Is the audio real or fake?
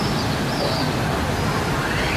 real